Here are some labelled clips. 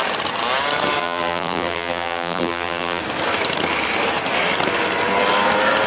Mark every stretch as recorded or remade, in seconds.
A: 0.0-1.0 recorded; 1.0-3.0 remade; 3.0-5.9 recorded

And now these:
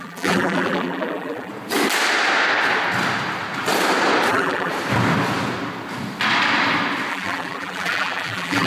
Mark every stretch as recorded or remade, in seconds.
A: 0.0-1.5 remade; 1.5-4.3 recorded; 4.3-4.7 remade; 4.7-7.1 recorded; 7.1-8.7 remade